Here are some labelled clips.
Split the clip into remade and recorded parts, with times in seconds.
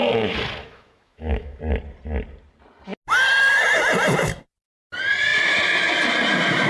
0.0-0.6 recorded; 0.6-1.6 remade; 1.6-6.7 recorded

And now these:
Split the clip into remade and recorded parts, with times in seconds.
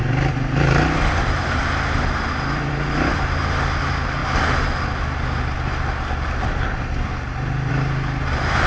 0.0-8.7 recorded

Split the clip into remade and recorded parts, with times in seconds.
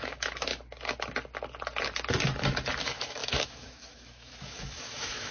0.0-0.5 remade; 0.5-2.8 recorded; 2.8-5.3 remade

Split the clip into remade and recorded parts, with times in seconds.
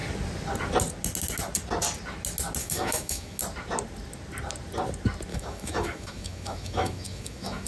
0.0-2.6 recorded; 2.6-3.4 remade; 3.4-5.3 recorded; 5.3-7.7 remade